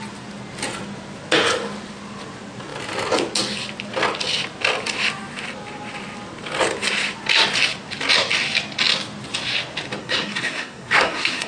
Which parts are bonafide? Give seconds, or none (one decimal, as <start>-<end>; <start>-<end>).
0.0-10.0